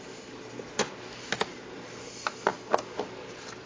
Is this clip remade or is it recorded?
recorded